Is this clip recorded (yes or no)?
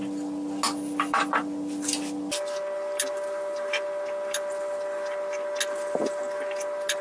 yes